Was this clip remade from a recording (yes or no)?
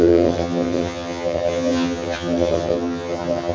yes